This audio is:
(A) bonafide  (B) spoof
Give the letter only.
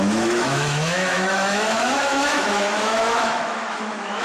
B